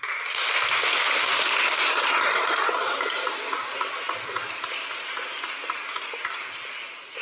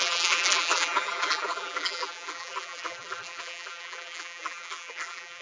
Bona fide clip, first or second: first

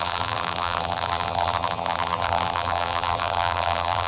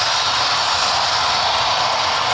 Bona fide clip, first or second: second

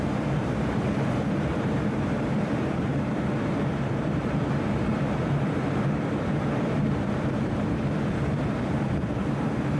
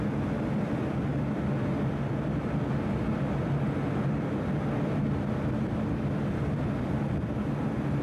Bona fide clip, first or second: second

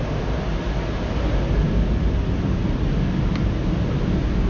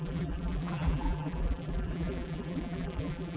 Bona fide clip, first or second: first